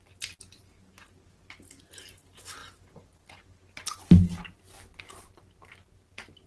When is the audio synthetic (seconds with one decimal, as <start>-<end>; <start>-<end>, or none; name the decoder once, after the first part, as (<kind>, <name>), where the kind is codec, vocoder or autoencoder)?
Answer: none